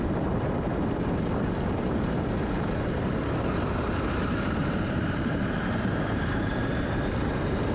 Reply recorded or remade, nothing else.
remade